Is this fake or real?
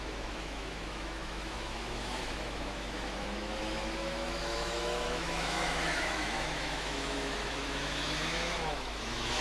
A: fake